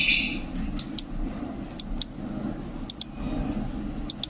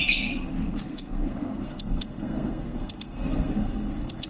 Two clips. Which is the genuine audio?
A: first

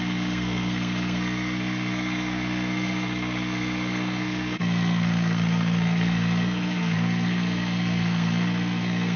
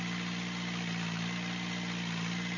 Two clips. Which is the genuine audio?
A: second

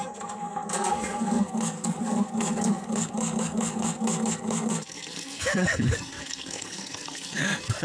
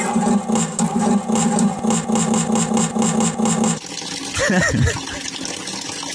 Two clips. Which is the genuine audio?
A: second